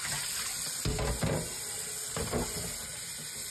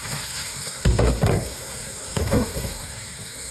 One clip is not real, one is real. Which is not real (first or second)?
second